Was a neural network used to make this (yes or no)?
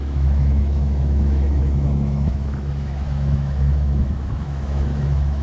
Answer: yes